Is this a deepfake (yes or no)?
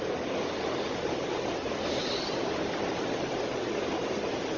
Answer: no